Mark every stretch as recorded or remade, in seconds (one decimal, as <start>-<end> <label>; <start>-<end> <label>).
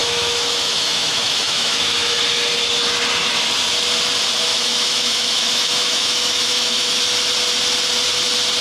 0.0-2.2 remade; 2.2-4.5 recorded; 4.5-7.0 remade; 7.0-8.6 recorded